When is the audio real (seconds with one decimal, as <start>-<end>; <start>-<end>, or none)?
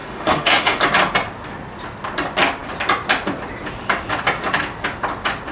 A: 0.8-5.5